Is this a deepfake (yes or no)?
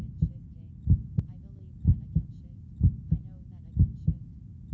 no